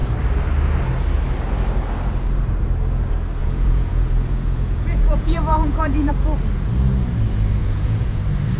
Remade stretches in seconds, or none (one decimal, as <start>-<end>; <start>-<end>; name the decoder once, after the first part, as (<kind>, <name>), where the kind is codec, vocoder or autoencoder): 3.4-6.1 (vocoder, Vocos); 7.6-8.2